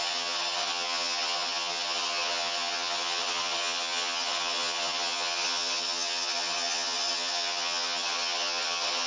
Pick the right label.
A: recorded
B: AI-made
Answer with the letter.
B